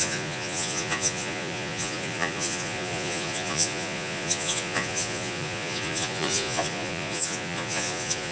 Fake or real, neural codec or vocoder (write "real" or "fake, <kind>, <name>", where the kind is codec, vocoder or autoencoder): fake, vocoder, Vocos